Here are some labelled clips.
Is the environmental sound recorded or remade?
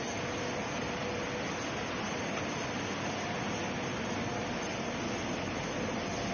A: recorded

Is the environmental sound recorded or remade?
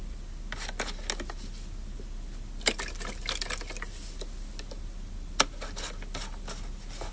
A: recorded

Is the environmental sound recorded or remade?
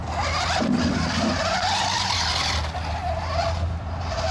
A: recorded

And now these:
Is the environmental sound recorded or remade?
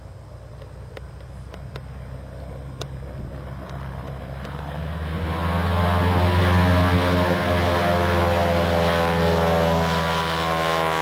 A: recorded